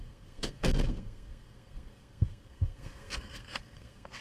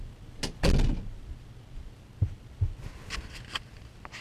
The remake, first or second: first